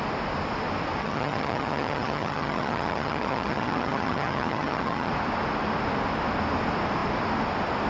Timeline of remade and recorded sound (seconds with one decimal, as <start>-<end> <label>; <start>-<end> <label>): 0.0-1.0 recorded; 1.0-5.1 remade; 5.1-7.9 recorded